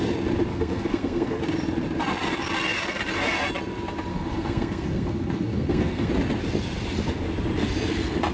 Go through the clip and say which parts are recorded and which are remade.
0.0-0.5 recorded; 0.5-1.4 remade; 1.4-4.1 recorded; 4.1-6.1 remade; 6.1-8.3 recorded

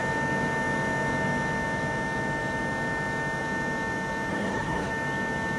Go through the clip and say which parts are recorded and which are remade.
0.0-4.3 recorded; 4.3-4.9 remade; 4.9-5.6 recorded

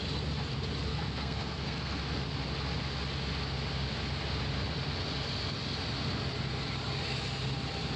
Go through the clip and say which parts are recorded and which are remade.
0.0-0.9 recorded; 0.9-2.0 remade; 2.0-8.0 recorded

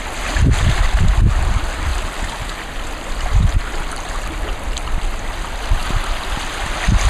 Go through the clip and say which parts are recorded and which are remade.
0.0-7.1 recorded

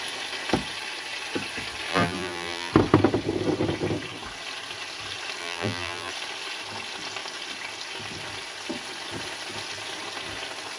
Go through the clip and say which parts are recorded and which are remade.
0.0-1.9 recorded; 1.9-2.7 remade; 2.7-5.4 recorded; 5.4-6.1 remade; 6.1-10.8 recorded

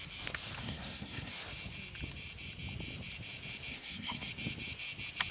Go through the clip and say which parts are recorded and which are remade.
0.0-0.6 recorded; 0.6-1.3 remade; 1.3-3.7 recorded; 3.7-4.3 remade; 4.3-5.3 recorded